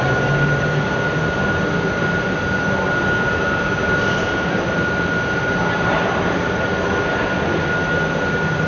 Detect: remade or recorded recorded